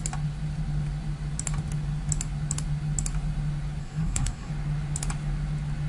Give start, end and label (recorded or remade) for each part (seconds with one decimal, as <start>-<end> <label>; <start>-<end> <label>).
0.0-3.8 recorded; 3.8-4.5 remade; 4.5-5.9 recorded